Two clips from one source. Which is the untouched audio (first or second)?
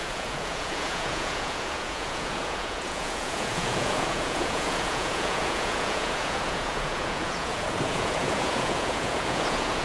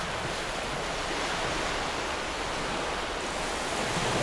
second